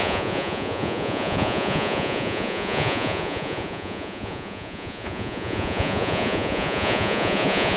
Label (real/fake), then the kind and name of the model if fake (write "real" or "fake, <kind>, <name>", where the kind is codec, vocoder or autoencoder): fake, vocoder, Vocos